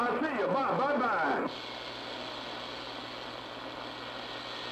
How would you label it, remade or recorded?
recorded